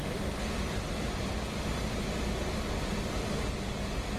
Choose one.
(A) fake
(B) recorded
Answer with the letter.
B